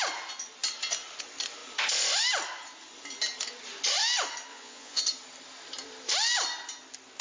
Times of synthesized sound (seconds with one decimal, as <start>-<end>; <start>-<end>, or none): 4.5-5.0